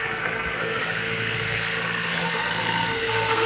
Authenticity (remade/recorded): remade